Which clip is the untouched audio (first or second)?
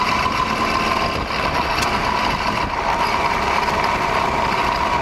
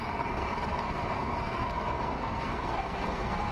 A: first